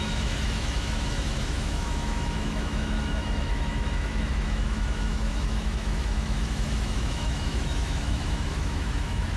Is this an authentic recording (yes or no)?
no